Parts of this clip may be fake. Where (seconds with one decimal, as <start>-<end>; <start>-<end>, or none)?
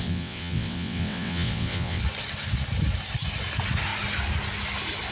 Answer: 0.0-2.0